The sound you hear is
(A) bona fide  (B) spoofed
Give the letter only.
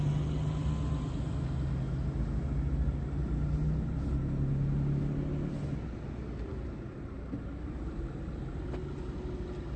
A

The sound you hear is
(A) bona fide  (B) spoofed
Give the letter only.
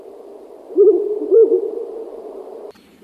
B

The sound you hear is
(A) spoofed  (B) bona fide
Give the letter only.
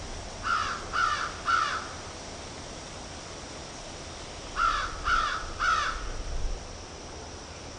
B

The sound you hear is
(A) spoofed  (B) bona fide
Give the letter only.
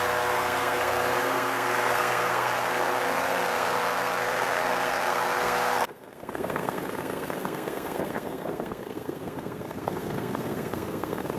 A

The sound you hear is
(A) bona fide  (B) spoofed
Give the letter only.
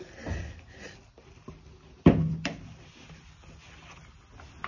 A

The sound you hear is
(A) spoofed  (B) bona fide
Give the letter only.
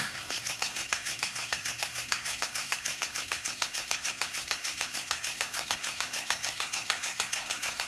A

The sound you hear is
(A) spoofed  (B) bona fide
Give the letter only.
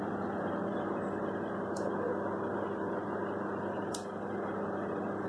B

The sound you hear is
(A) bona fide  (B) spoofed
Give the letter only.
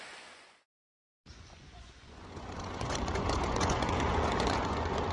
B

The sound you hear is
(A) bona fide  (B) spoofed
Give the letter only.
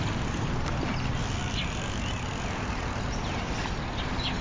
A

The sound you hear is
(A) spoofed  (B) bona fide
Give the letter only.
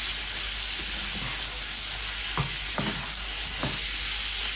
B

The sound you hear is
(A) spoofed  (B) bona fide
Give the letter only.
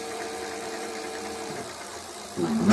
A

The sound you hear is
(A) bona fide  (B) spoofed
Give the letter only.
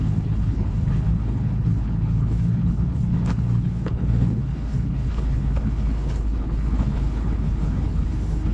B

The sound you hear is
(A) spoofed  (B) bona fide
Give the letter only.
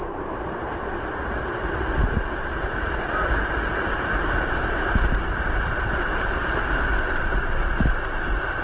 B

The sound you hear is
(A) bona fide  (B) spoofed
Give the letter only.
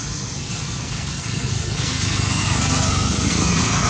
B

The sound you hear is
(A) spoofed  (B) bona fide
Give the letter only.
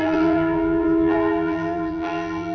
A